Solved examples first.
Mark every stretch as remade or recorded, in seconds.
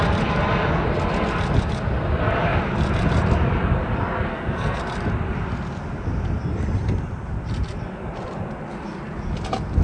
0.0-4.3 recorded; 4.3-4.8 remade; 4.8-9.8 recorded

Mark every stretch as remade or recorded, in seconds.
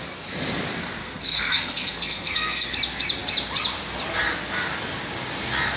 0.0-1.0 recorded; 1.0-2.7 remade; 2.7-5.8 recorded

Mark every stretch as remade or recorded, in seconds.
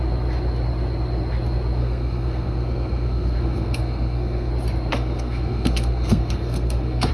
0.0-1.8 recorded; 1.8-4.5 remade; 4.5-4.9 recorded; 4.9-7.1 remade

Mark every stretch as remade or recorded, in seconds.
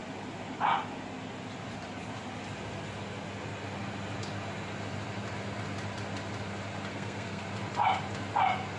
0.0-6.9 recorded; 6.9-7.4 remade; 7.4-8.8 recorded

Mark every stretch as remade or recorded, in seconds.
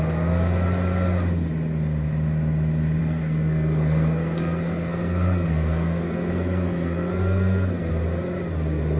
0.0-3.0 recorded; 3.0-7.9 remade; 7.9-9.0 recorded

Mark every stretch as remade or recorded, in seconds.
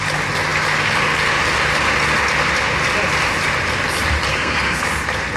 0.0-4.3 recorded; 4.3-4.9 remade; 4.9-5.4 recorded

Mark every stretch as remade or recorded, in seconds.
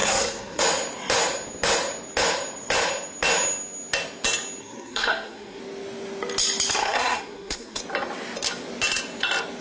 0.0-0.6 remade; 0.6-4.6 recorded; 4.6-5.6 remade; 5.6-6.8 recorded; 6.8-7.8 remade; 7.8-9.6 recorded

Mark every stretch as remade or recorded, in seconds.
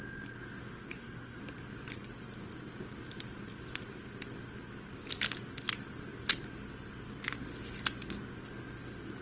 0.0-0.7 recorded; 0.7-1.4 remade; 1.4-9.2 recorded